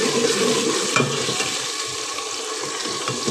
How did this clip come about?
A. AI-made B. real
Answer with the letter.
B